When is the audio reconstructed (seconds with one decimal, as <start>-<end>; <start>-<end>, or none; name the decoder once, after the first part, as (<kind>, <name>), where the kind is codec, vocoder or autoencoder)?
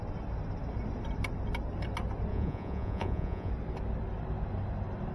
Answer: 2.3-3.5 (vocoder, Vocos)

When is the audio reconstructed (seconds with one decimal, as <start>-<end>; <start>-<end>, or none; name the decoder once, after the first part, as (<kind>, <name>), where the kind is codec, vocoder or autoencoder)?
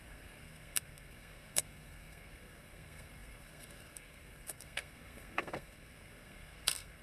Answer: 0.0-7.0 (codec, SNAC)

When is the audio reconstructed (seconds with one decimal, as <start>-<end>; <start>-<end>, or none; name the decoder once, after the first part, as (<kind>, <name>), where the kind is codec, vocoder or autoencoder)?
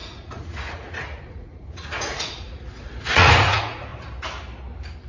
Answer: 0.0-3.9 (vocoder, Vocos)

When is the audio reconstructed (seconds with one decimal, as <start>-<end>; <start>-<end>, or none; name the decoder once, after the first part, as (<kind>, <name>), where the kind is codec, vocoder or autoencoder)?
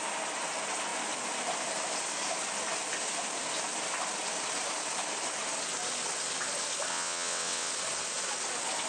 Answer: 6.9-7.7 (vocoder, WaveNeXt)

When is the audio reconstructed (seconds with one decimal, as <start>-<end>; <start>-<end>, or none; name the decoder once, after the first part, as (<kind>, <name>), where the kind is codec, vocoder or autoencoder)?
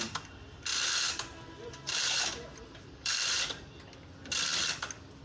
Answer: 0.7-3.8 (vocoder, BigVGAN v2)